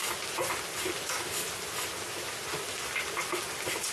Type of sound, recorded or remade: recorded